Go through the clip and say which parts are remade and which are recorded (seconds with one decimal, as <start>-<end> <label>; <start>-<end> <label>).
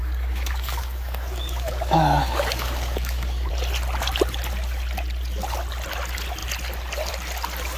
0.0-3.5 remade; 3.5-7.8 recorded